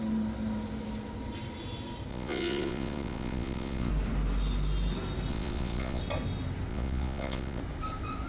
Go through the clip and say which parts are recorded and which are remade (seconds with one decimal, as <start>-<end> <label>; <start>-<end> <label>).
0.0-2.1 recorded; 2.1-3.9 remade; 3.9-5.3 recorded; 5.3-6.0 remade; 6.0-6.7 recorded; 6.7-7.6 remade; 7.6-8.3 recorded